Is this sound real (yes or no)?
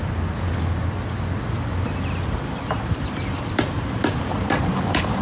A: yes